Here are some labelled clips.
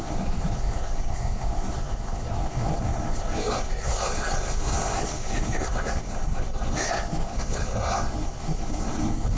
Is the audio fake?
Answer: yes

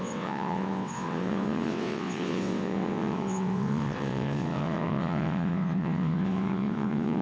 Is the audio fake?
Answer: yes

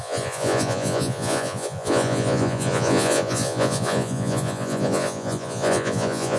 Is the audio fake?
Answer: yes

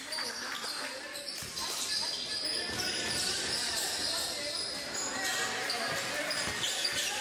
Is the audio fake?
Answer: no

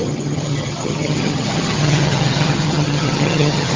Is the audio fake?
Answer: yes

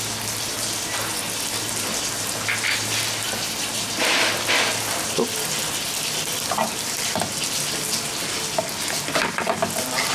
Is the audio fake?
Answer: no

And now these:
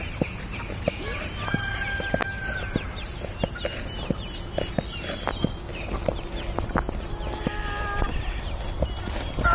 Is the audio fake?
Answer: no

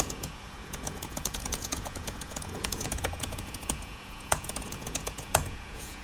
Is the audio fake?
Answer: yes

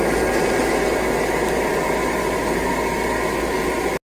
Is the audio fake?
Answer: no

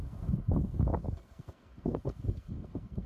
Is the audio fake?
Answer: yes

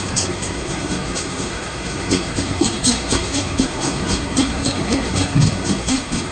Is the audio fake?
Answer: yes